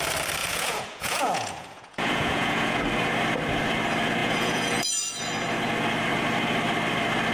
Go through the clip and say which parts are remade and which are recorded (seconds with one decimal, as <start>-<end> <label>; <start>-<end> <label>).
0.0-0.4 recorded; 0.4-2.8 remade; 2.8-4.2 recorded; 4.2-5.2 remade; 5.2-7.3 recorded